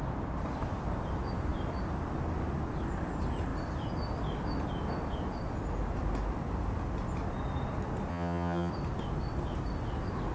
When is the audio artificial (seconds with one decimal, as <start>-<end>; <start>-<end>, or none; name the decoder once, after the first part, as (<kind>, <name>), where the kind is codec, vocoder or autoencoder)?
8.1-8.7 (vocoder, HiFi-GAN)